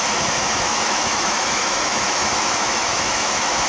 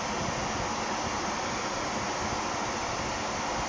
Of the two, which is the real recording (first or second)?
second